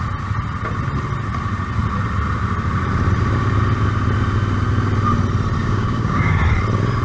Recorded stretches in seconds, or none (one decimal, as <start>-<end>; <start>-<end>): 0.0-5.6; 6.4-7.0